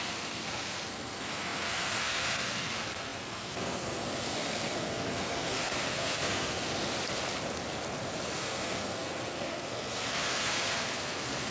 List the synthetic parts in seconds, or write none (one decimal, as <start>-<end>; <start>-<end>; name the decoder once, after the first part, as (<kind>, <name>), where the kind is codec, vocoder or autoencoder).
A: 0.0-6.9 (codec, SNAC); 8.3-11.5